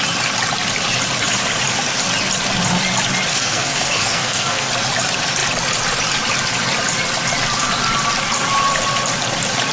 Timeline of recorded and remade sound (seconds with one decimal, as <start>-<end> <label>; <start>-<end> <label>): 0.0-3.3 recorded; 3.3-4.7 remade; 4.7-9.7 recorded